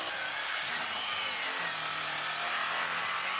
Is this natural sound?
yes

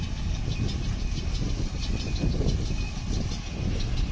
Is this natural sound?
yes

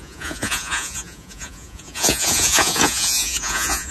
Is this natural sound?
no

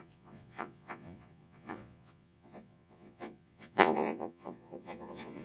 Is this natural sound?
no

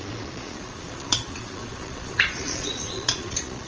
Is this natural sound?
no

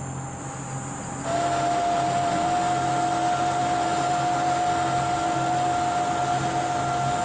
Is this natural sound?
yes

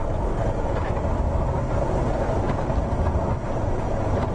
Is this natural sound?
yes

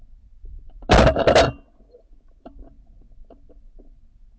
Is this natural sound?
yes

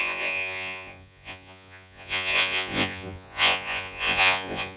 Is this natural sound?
no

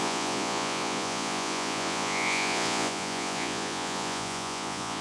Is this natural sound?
no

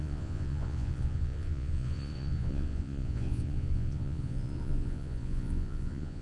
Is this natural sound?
no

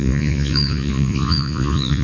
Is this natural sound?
no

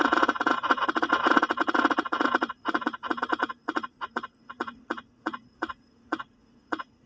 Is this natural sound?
no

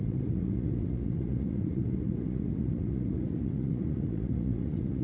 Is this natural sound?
no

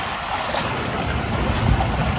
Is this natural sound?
yes